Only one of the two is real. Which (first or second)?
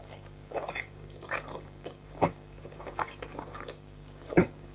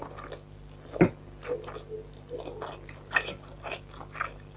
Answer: second